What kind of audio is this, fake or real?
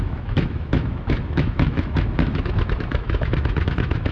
fake